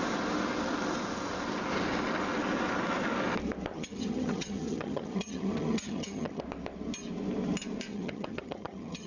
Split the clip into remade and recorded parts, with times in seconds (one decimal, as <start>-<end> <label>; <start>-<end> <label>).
0.0-3.7 recorded; 3.7-6.4 remade; 6.4-7.9 recorded; 7.9-9.1 remade